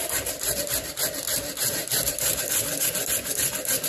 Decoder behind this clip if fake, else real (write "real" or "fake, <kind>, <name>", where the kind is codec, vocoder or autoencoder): real